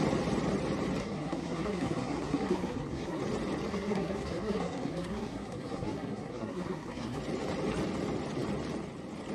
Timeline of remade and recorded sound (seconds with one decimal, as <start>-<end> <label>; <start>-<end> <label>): 0.0-1.0 recorded; 1.0-3.2 remade; 3.2-3.7 recorded; 3.7-7.2 remade; 7.2-9.3 recorded